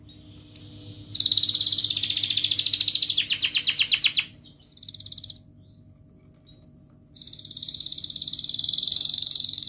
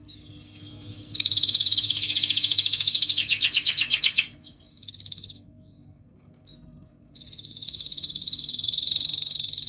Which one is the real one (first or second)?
first